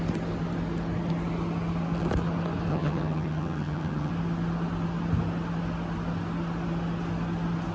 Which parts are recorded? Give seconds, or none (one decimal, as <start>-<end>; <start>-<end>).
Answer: 0.0-2.7; 4.1-7.7